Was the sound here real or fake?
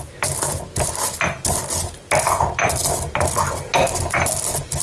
real